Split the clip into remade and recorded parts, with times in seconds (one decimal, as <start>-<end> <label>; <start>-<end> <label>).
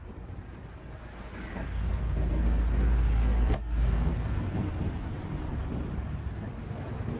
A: 0.0-1.5 recorded; 1.5-4.7 remade; 4.7-7.2 recorded